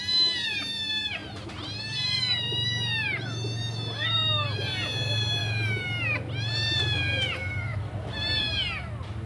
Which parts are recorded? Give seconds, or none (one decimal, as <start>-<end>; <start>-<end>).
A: 0.0-1.2; 2.2-5.4; 6.8-7.7; 8.4-9.3

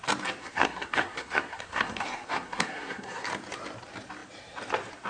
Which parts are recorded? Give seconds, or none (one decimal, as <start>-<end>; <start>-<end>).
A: 0.0-0.4; 3.3-5.1